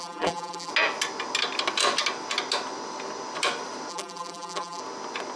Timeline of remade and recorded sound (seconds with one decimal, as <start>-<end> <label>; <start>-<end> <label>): 0.0-0.7 remade; 0.7-3.9 recorded; 3.9-4.8 remade; 4.8-5.4 recorded